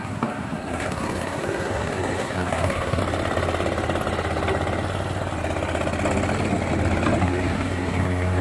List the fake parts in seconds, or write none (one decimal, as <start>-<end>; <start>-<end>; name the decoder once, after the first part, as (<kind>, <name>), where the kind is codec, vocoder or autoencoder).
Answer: 0.0-3.0 (codec, SNAC); 7.2-8.4